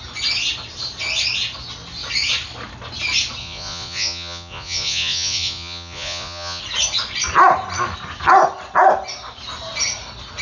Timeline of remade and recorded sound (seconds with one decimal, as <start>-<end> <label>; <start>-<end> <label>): 0.0-3.4 recorded; 3.4-6.6 remade; 6.6-10.4 recorded